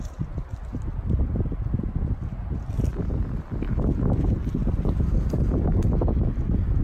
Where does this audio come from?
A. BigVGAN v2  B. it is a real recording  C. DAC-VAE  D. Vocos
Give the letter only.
B